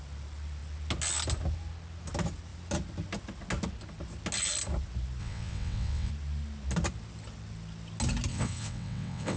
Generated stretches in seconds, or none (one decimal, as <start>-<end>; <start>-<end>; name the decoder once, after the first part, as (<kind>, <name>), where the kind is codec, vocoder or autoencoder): 5.2-6.1 (vocoder, WaveNeXt); 8.3-9.4